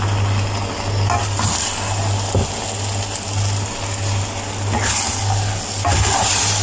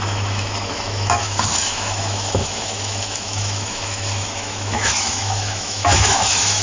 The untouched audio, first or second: first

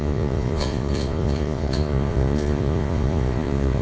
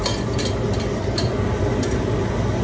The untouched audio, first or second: second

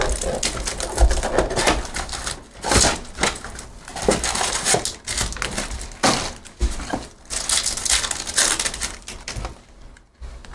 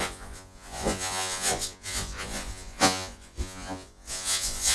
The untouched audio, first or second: first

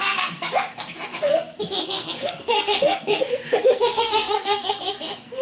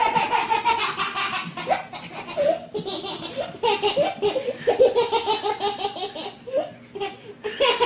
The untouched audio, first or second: second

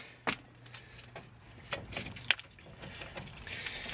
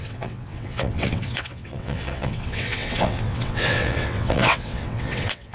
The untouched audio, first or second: first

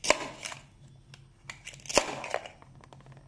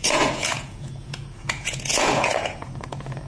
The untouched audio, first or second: first